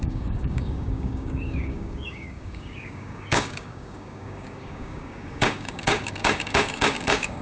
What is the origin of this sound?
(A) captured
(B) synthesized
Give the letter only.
B